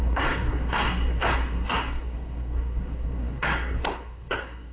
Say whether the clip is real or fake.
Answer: fake